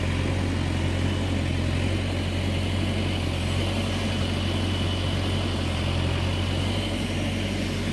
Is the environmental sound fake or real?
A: real